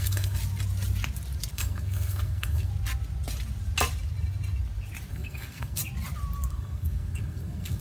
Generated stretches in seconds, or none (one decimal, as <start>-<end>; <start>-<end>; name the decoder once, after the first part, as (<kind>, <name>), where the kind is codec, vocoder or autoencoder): 0.0-0.4 (codec, SNAC); 1.5-2.7; 5.1-5.8; 6.5-7.8